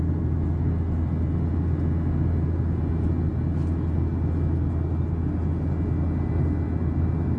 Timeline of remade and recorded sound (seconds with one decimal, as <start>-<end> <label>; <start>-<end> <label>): 0.0-7.4 recorded